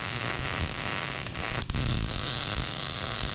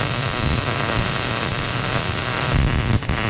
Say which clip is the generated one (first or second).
first